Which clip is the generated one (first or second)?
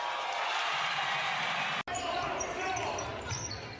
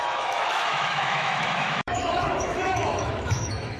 second